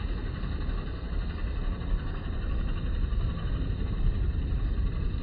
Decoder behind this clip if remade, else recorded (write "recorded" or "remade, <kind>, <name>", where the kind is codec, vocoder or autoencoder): recorded